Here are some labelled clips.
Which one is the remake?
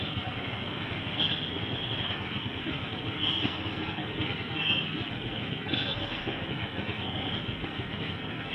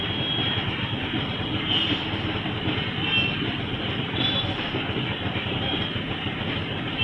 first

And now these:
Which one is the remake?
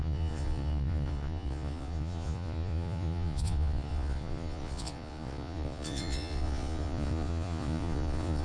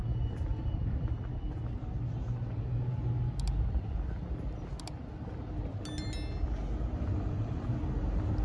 first